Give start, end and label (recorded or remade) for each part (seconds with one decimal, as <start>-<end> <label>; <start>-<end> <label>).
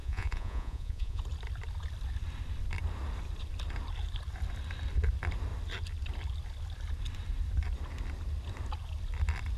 0.0-1.2 remade; 1.2-9.6 recorded